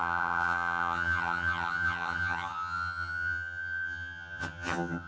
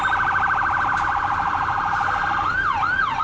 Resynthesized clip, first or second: first